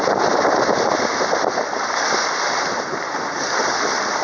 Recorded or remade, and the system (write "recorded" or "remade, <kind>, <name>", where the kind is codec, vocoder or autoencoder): remade, vocoder, BigVGAN v2